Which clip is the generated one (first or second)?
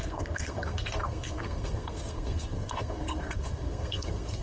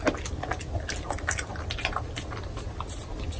first